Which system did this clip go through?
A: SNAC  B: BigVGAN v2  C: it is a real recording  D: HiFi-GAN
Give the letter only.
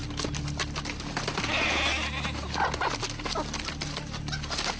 C